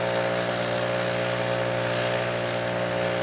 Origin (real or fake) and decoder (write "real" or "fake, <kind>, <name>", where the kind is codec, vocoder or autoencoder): real